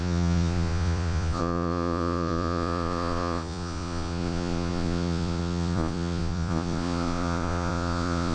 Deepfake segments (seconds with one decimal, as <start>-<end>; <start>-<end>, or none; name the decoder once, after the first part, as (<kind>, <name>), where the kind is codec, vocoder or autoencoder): 0.0-8.3 (vocoder, Vocos)